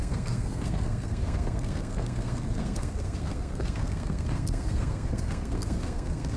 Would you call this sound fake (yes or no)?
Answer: yes